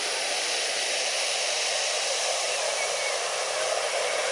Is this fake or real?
fake